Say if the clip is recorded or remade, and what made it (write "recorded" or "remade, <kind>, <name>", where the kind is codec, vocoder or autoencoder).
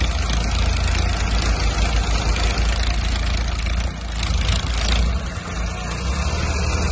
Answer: recorded